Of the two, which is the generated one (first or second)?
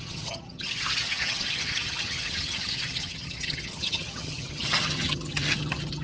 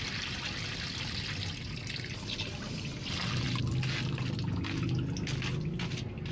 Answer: first